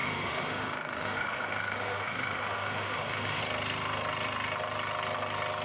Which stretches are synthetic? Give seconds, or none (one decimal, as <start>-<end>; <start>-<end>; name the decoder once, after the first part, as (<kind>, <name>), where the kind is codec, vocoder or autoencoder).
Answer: 0.0-3.4 (autoencoder, DAC-VAE)